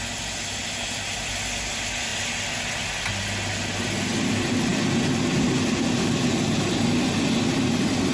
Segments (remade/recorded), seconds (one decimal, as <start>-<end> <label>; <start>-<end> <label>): 0.0-8.1 recorded